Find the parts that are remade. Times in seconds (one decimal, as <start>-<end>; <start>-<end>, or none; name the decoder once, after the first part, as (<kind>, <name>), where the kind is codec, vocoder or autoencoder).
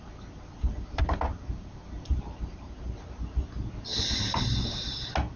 none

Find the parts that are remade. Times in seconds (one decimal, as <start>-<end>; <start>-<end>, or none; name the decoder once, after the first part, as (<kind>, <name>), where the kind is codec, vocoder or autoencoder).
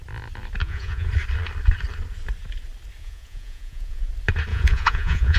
0.6-1.1 (vocoder, Vocos); 3.0-4.1; 4.5-5.4